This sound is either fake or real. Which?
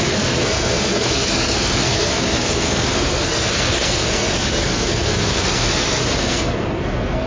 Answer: fake